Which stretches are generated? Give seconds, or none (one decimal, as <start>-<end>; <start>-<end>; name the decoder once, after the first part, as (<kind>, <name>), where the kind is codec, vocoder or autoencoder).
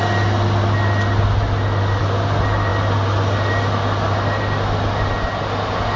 none